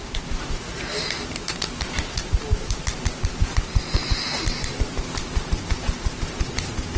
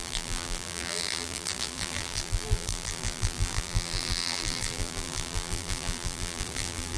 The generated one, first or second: second